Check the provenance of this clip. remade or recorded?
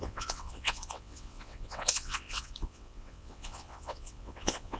remade